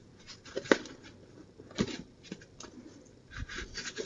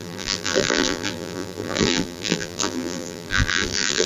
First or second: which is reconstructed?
second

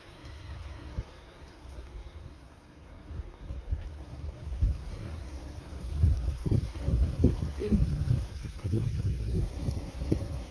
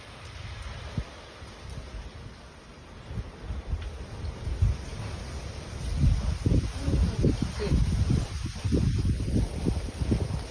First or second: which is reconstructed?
first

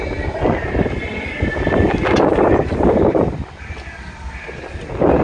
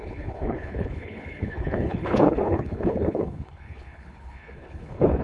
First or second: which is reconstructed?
second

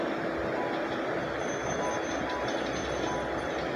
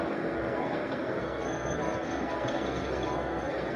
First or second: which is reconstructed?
second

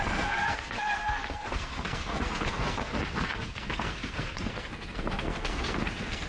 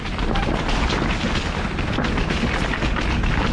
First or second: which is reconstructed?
first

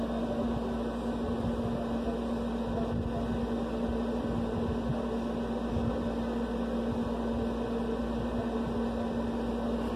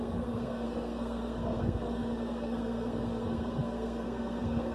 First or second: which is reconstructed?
second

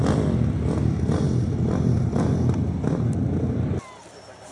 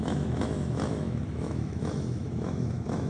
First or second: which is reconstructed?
second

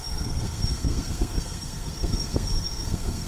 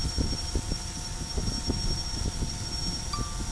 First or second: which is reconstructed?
first